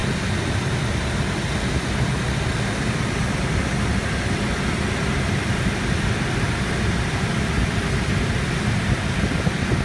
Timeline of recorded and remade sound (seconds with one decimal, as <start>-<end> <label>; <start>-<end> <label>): 0.0-9.8 recorded